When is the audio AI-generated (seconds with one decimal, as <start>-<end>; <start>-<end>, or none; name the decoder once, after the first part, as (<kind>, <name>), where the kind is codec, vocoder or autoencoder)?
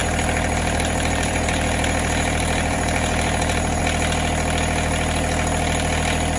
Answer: 0.0-3.8 (vocoder, BigVGAN v2)